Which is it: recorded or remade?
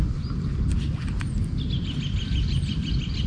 recorded